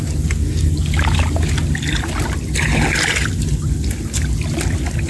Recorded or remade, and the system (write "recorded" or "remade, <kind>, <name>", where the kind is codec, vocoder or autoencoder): recorded